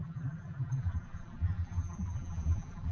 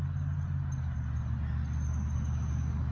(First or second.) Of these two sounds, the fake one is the first